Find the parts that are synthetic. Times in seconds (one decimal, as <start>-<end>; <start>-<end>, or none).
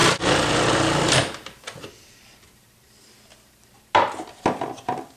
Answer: 0.0-3.1